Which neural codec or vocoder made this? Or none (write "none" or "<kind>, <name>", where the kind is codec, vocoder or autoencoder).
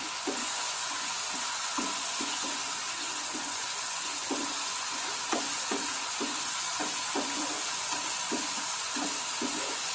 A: vocoder, Vocos